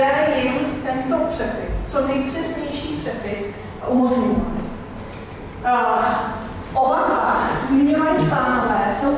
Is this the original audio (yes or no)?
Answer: no